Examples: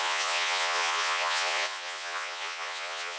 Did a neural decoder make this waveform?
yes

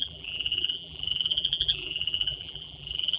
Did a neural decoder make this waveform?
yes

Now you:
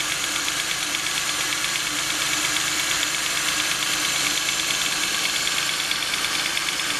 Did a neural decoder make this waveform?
no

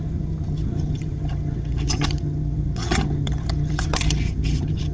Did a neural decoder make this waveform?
yes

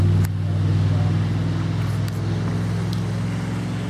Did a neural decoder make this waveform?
no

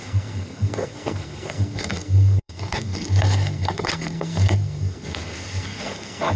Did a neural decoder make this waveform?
yes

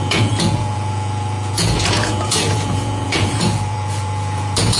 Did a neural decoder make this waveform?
yes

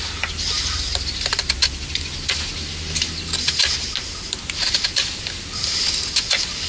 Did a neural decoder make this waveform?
no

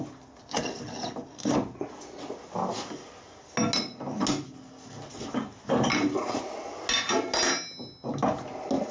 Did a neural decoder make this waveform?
no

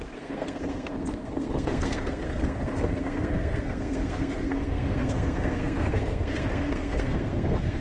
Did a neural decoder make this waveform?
yes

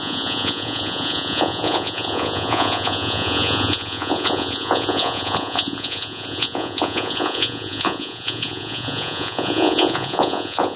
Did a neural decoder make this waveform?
yes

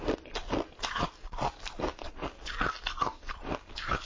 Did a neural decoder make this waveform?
no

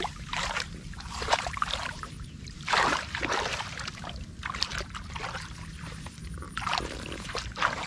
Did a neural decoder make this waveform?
yes